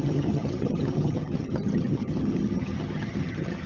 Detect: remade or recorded remade